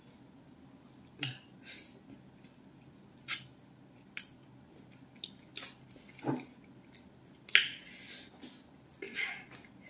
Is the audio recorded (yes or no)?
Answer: yes